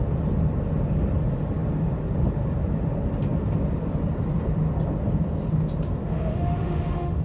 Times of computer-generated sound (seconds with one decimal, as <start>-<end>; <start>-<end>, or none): 6.0-7.2